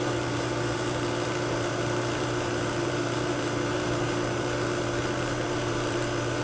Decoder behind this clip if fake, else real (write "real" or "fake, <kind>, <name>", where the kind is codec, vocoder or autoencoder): fake, vocoder, BigVGAN v2